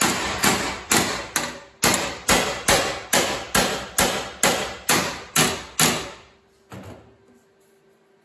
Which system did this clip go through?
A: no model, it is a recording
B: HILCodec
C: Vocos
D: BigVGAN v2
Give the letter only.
A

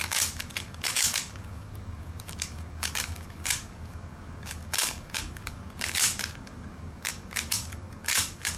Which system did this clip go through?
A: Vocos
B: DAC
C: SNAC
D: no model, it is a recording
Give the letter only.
B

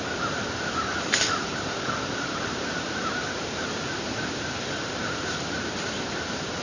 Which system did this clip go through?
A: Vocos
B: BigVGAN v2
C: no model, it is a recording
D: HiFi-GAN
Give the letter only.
B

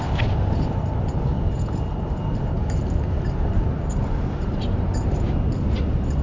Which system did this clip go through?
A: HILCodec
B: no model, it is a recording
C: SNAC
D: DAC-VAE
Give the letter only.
B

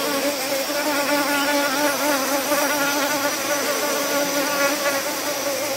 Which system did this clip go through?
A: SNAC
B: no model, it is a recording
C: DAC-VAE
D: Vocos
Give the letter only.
B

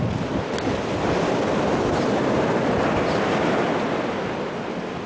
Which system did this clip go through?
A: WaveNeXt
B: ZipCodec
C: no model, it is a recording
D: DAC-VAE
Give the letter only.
C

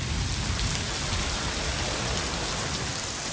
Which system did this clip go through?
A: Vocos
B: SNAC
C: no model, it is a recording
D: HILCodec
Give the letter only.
C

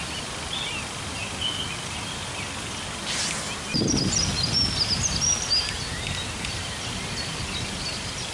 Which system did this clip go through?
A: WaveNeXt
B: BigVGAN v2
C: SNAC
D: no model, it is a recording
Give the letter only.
D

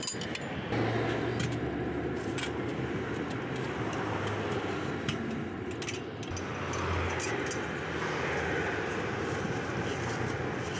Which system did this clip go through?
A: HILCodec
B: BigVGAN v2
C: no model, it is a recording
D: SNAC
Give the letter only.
C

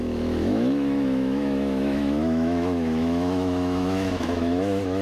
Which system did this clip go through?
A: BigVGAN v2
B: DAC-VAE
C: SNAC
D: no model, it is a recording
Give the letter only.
B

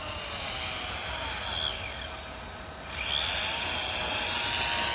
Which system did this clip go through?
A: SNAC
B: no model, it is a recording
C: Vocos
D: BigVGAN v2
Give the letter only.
B